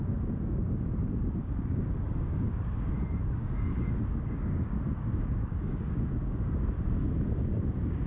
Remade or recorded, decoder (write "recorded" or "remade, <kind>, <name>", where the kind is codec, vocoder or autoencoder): remade, codec, DAC